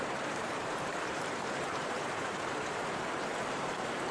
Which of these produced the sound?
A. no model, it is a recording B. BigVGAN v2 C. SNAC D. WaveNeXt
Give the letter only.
B